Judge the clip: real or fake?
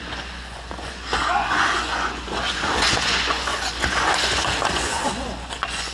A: fake